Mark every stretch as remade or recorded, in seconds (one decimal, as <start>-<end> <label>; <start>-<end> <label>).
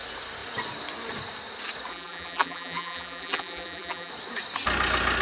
0.0-1.9 recorded; 1.9-4.1 remade; 4.1-5.2 recorded